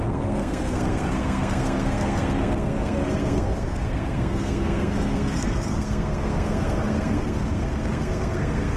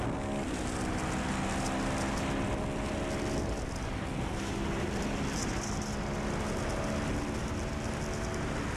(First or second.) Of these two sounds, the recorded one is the second